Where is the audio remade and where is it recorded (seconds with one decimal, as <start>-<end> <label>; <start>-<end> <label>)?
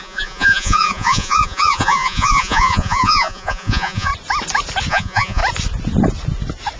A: 0.0-4.1 remade; 4.1-4.9 recorded; 4.9-5.4 remade; 5.4-6.8 recorded